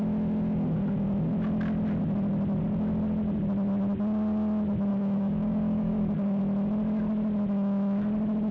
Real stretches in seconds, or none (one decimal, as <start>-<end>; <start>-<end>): 0.0-4.9; 6.4-8.5